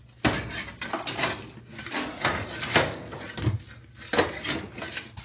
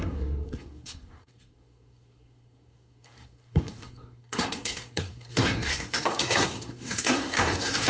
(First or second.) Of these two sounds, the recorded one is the first